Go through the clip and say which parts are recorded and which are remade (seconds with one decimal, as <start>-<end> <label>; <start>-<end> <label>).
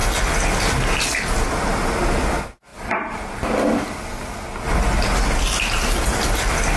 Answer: 0.0-6.8 recorded